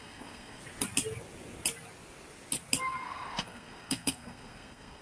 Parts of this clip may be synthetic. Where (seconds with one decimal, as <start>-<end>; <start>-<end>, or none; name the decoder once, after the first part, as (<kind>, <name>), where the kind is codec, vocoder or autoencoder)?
0.0-0.6 (codec, SNAC); 2.8-5.0